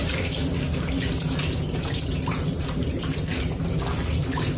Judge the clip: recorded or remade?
remade